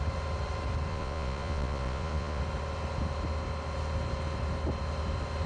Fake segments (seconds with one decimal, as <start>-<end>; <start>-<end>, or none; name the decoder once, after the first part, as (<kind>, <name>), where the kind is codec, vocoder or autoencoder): 0.9-2.4 (vocoder, Vocos)